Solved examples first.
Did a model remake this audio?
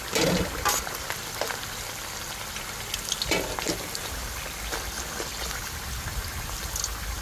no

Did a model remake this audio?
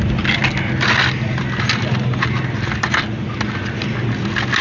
no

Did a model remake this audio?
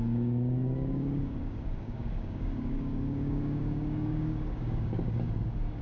yes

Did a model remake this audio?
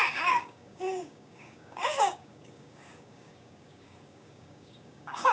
yes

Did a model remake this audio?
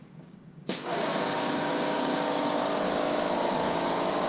yes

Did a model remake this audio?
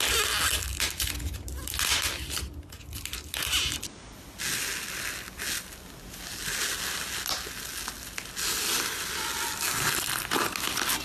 no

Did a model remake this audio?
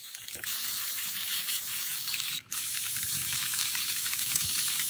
yes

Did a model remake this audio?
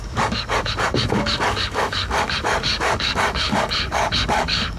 yes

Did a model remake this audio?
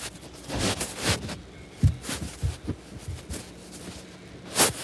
no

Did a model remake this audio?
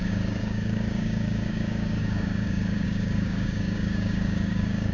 yes